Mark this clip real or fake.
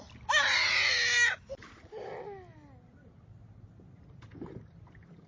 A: real